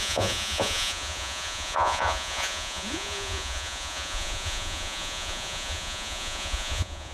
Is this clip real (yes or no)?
no